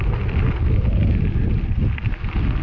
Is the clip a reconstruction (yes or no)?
no